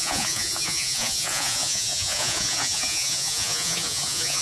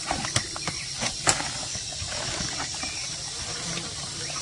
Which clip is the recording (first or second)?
second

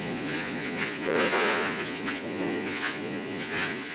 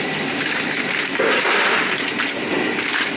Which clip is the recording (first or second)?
second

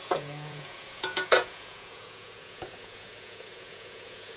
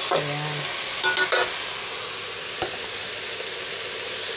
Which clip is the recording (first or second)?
second